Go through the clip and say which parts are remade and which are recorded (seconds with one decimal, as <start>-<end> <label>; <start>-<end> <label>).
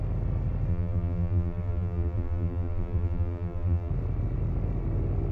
0.0-0.7 recorded; 0.7-3.9 remade; 3.9-5.3 recorded